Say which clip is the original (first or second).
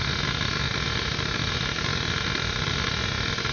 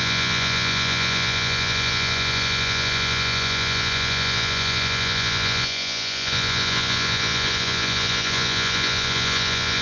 first